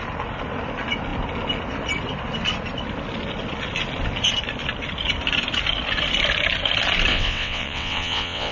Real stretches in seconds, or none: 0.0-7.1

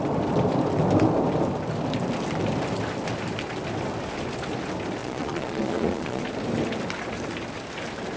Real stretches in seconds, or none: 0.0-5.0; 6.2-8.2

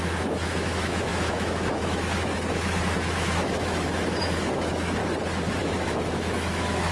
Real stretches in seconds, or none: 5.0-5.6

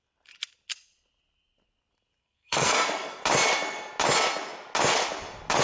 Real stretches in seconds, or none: 0.0-2.2; 3.2-5.6